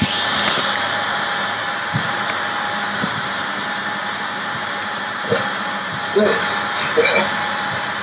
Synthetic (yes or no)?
yes